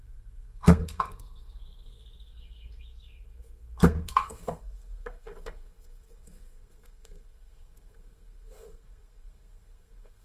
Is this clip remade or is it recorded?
remade